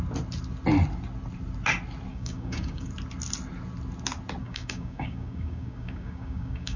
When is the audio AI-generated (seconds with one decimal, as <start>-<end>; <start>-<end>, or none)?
2.1-2.9; 4.4-6.8